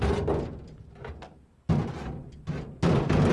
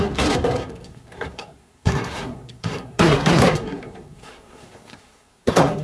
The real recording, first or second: first